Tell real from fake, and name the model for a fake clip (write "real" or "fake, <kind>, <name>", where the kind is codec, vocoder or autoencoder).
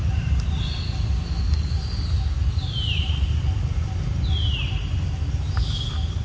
real